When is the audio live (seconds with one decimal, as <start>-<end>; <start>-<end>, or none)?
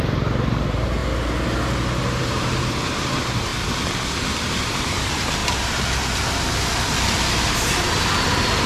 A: 1.0-2.2; 3.5-4.1; 5.4-8.7